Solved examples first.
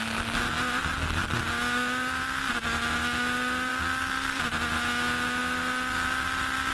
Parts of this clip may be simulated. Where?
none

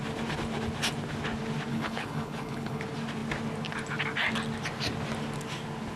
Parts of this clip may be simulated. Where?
1.7-2.8 (codec, HILCodec)

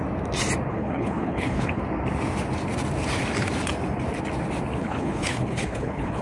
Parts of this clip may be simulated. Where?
0.7-1.8 (codec, HILCodec); 4.8-6.2